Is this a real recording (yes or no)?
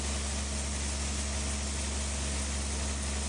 yes